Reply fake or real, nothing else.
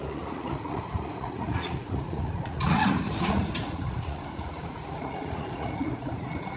fake